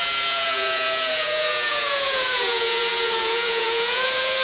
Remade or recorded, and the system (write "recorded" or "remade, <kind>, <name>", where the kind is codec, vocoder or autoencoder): remade, vocoder, Vocos